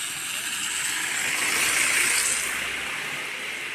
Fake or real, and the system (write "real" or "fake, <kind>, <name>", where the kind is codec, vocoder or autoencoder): real